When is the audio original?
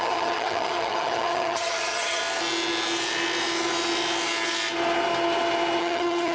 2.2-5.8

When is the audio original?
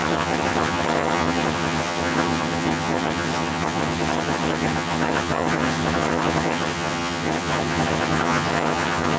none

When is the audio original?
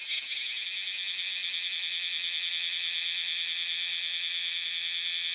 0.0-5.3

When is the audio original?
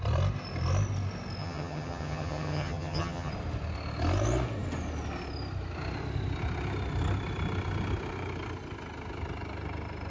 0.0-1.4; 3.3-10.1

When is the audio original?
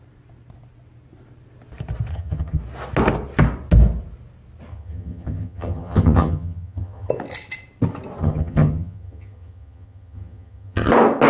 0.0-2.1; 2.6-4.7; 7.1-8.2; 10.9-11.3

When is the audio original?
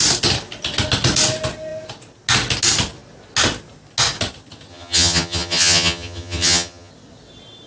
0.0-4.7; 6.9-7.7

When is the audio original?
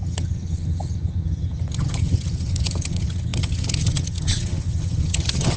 none